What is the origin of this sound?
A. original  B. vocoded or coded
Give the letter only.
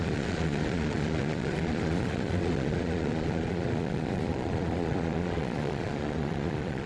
B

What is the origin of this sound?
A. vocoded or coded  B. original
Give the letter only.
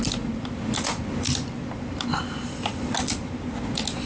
B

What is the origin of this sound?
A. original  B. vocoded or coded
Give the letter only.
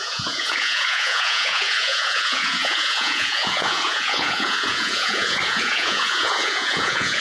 B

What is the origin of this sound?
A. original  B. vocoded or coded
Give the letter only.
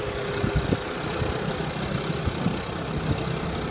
A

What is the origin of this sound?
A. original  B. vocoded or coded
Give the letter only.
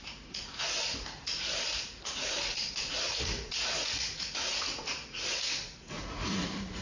B